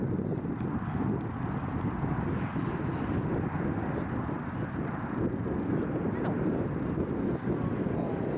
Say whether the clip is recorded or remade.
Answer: recorded